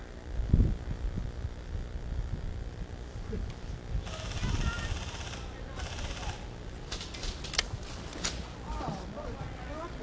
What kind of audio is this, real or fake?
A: real